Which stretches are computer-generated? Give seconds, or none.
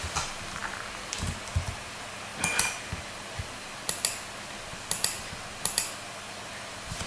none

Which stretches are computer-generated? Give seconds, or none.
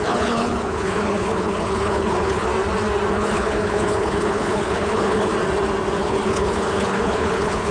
0.0-2.5 (codec, HILCodec); 3.1-5.3; 6.0-7.7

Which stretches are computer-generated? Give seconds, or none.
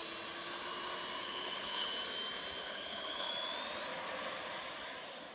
1.2-1.9 (codec, HILCodec); 2.6-3.3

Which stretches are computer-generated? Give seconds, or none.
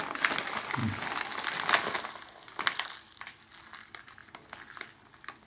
none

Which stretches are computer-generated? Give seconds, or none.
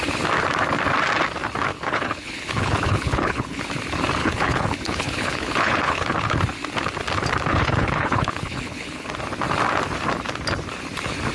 1.7-3.6 (codec, HILCodec); 4.2-6.4; 7.5-9.1